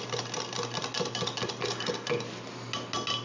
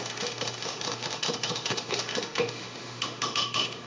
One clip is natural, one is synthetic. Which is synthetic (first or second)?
second